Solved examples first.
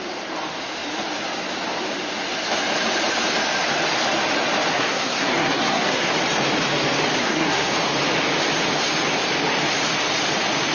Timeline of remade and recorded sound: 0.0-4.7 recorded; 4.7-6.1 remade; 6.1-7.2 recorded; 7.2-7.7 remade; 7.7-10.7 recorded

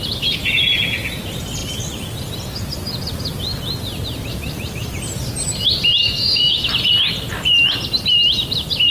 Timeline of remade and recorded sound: 0.0-6.0 recorded; 6.0-6.7 remade; 6.7-8.9 recorded